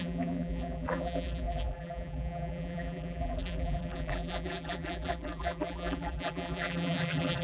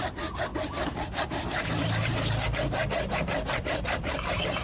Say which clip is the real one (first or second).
second